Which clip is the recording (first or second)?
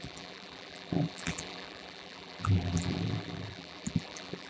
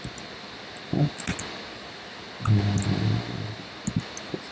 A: second